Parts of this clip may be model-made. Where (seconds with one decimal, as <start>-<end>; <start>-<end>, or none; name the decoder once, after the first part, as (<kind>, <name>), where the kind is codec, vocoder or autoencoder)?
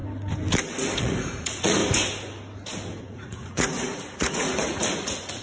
1.0-1.8 (vocoder, Vocos); 3.0-5.4